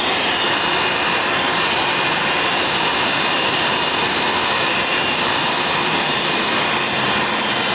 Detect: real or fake fake